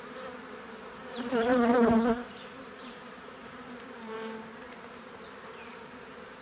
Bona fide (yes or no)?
no